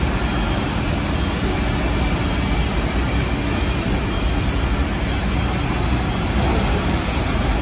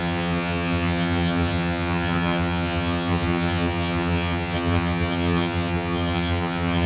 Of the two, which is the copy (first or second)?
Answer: second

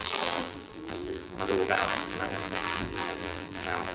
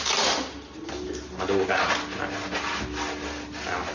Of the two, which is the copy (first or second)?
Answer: first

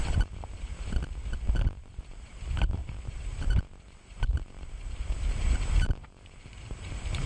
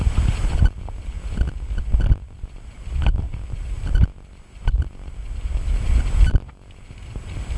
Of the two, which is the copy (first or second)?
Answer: first